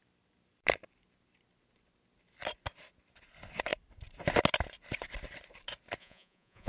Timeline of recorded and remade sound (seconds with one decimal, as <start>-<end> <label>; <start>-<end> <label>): 0.0-6.0 recorded; 6.0-6.7 remade